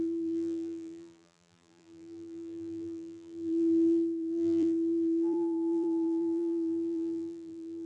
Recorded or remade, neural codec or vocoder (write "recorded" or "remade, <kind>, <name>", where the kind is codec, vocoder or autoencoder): remade, vocoder, BigVGAN v2